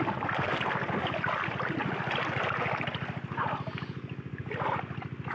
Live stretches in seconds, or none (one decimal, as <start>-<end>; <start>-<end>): 0.0-5.3